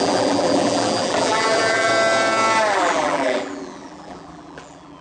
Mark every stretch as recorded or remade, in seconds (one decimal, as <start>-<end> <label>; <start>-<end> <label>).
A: 0.0-1.9 remade; 1.9-2.7 recorded; 2.7-5.0 remade